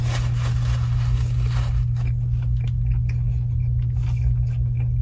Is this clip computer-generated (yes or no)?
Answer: no